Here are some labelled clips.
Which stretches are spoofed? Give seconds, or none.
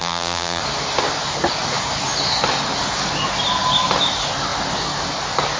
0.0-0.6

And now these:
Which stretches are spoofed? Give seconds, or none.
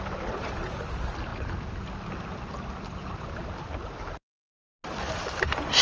none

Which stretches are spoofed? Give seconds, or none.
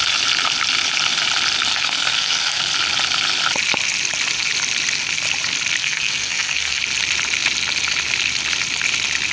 1.7-2.6; 5.8-6.8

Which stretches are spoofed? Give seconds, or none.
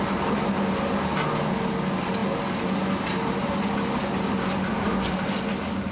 none